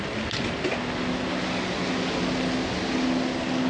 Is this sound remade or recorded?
recorded